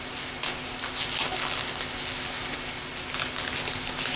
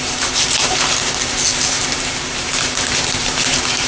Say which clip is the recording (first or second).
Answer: first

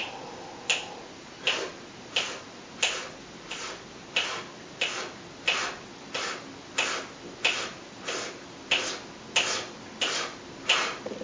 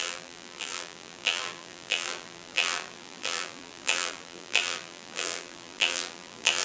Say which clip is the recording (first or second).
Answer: first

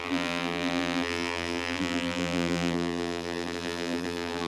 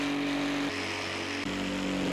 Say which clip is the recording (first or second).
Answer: second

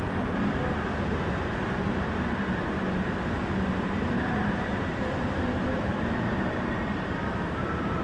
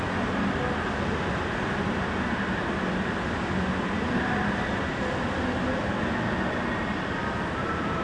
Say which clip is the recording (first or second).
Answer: second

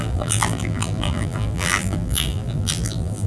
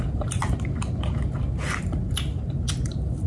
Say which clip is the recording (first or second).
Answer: second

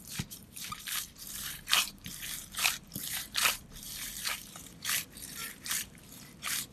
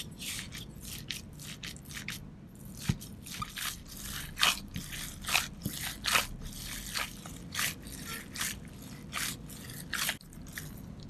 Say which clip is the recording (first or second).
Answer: second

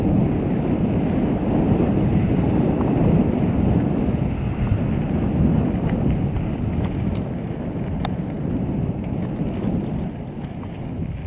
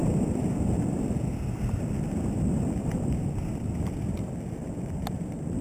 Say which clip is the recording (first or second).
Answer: first